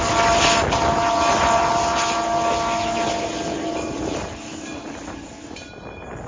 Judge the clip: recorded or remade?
recorded